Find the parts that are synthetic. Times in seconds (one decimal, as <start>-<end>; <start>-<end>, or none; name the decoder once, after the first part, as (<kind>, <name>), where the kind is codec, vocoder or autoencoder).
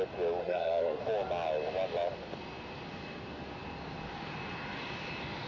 0.4-1.0 (codec, SNAC)